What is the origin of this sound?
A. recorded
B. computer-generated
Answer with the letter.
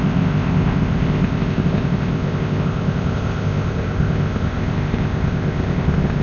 B